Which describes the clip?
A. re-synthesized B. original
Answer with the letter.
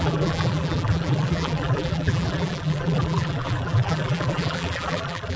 A